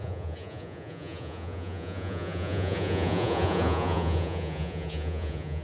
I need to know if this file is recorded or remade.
remade